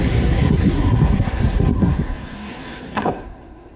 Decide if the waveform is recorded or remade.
remade